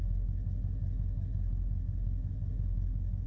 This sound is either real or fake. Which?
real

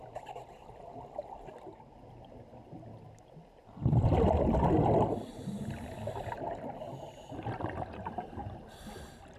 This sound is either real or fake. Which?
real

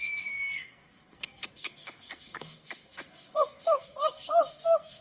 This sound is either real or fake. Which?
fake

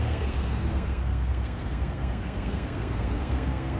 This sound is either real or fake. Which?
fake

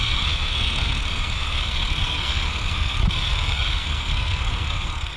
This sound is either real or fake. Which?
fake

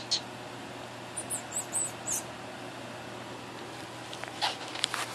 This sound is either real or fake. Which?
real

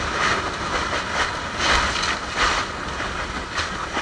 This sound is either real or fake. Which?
real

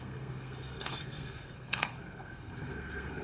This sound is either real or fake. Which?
fake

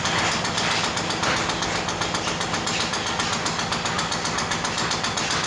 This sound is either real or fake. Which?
real